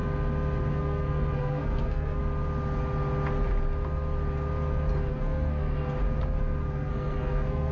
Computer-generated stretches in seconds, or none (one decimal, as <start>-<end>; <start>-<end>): 0.7-2.2; 5.1-5.8; 6.7-7.7